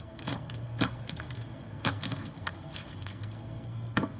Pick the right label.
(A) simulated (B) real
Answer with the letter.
A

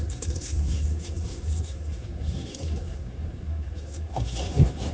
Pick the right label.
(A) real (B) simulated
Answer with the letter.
B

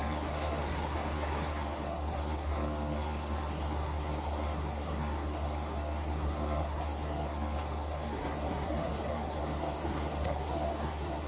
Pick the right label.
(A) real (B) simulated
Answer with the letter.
B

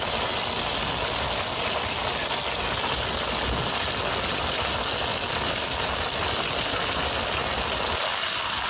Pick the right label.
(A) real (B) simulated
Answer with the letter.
A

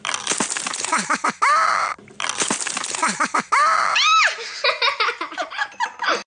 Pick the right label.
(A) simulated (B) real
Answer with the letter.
B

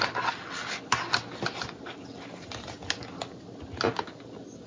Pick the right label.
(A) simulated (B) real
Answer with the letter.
B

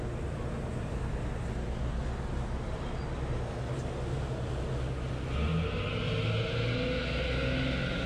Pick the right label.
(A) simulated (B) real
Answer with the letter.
B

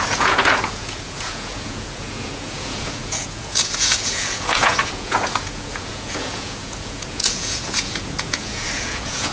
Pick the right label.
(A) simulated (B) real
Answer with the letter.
A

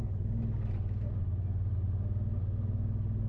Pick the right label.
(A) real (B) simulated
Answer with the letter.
A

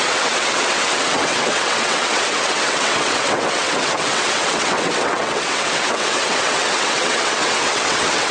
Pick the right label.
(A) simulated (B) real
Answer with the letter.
A